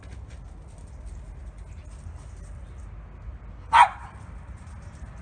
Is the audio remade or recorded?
recorded